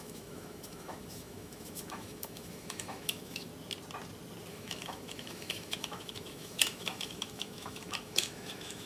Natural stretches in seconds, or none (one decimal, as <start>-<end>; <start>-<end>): 3.5-4.5